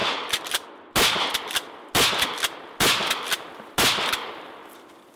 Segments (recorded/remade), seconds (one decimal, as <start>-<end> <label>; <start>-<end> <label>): 0.0-5.2 recorded